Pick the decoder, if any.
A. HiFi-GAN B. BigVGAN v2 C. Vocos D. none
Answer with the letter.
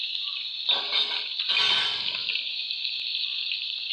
D